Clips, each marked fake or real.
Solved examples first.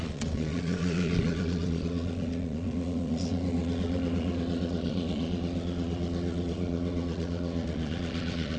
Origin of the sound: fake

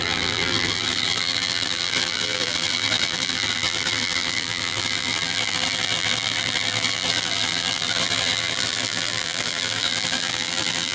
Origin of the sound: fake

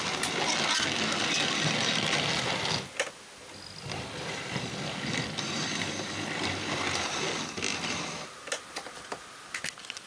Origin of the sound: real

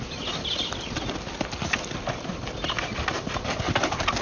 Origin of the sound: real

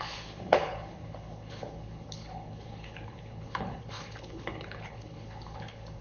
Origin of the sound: fake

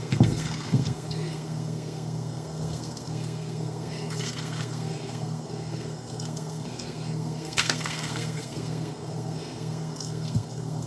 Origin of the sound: fake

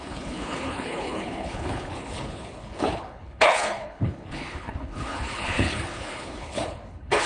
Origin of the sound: fake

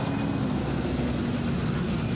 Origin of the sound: real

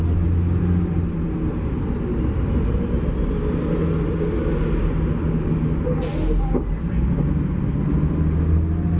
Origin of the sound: real